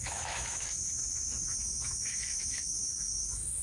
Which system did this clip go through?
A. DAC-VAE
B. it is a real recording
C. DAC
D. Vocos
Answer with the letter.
A